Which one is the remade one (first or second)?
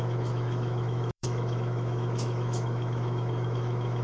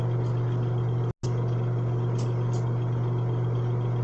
first